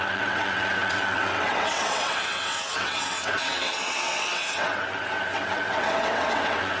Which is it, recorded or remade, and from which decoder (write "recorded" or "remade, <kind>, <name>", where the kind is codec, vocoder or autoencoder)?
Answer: remade, vocoder, WaveNeXt